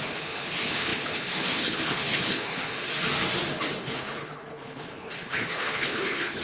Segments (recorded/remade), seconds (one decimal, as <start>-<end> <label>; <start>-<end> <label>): 0.0-2.9 remade; 2.9-3.8 recorded; 3.8-6.4 remade